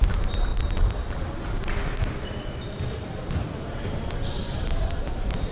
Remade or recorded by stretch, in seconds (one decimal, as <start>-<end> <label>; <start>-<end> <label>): 0.0-0.5 remade; 0.5-2.8 recorded; 2.8-5.5 remade